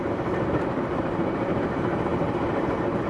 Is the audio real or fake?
fake